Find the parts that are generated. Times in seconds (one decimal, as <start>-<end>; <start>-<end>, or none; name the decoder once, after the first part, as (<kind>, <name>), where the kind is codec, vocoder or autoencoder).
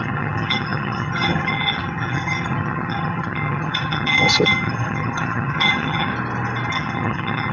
0.0-6.1 (vocoder, HiFi-GAN); 6.7-7.5